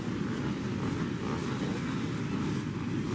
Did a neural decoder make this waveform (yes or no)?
no